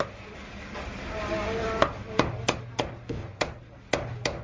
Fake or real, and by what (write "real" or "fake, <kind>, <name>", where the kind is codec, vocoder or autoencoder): real